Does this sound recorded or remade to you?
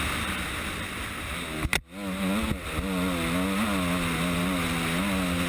recorded